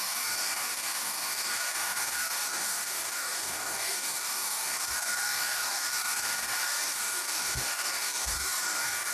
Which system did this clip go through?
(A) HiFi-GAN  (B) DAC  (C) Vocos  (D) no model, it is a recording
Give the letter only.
B